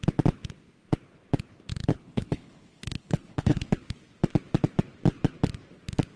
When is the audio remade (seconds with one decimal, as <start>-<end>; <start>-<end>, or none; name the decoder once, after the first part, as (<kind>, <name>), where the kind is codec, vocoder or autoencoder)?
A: 1.9-3.7 (codec, HILCodec)